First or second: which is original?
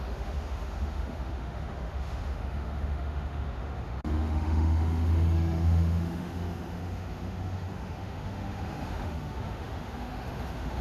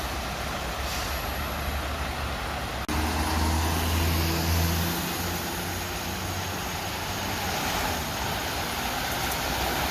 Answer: second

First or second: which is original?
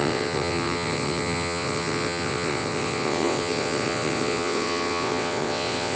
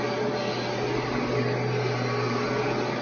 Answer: second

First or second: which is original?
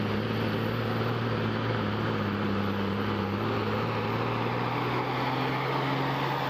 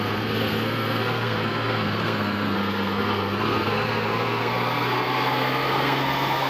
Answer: first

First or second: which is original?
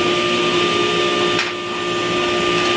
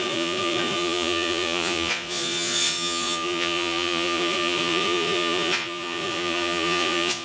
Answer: first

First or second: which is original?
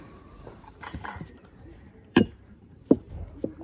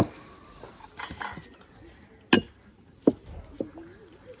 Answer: second